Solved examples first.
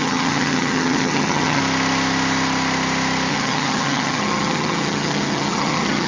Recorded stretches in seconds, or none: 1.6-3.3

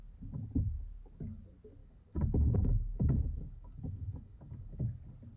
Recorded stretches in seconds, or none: 0.0-1.8; 5.0-5.4

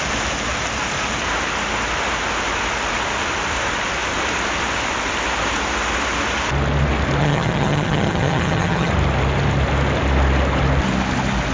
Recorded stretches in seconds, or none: 0.0-7.2; 8.9-11.5

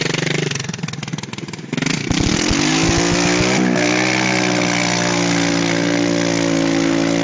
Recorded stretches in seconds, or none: 0.0-7.2

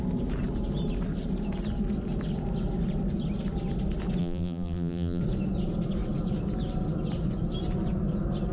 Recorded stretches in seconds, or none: 0.0-4.2; 5.2-8.5

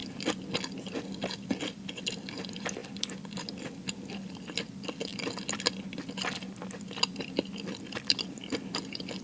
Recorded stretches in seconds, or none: 0.0-9.2

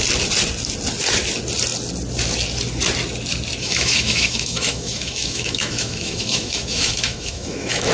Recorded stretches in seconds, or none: 0.0-3.6

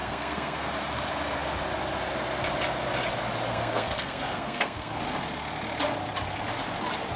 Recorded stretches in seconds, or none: 0.7-3.5; 5.0-7.2